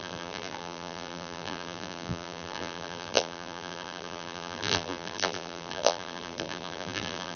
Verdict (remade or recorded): remade